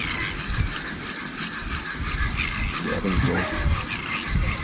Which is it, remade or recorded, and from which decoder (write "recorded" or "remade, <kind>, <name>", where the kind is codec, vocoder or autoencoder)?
recorded